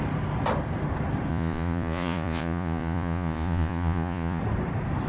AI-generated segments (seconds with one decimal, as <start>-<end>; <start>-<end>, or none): 1.3-4.4